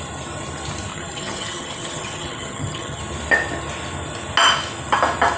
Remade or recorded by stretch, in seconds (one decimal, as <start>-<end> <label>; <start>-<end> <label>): 0.0-0.9 recorded; 0.9-3.0 remade; 3.0-5.4 recorded